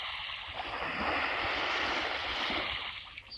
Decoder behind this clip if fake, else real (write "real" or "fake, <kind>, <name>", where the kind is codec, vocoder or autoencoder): real